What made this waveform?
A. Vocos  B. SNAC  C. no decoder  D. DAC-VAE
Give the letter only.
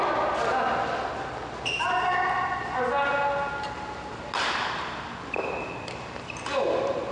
C